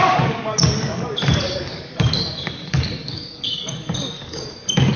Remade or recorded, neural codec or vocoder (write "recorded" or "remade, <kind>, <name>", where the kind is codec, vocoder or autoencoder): remade, codec, DAC